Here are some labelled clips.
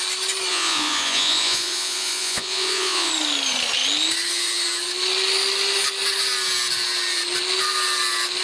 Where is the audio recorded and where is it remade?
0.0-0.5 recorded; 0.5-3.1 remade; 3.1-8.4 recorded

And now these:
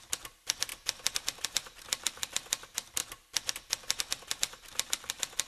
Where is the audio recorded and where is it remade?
0.0-0.7 remade; 0.7-1.4 recorded; 1.4-3.0 remade; 3.0-5.5 recorded

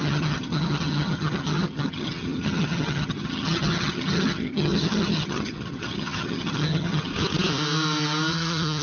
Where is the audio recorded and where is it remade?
0.0-7.1 remade; 7.1-8.3 recorded; 8.3-8.8 remade

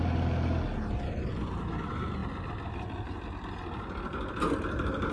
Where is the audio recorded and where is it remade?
0.0-5.1 recorded

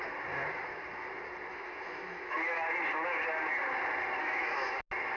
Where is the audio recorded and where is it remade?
0.0-1.5 recorded; 1.5-2.6 remade; 2.6-4.2 recorded; 4.2-4.8 remade; 4.8-5.2 recorded